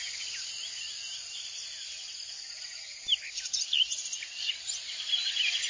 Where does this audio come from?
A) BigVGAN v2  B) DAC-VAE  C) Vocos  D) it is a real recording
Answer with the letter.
A